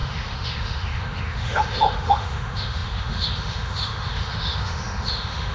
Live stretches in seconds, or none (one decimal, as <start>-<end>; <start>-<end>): none